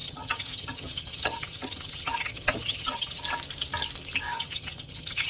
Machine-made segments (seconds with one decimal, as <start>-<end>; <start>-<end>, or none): 0.0-3.2; 4.3-5.3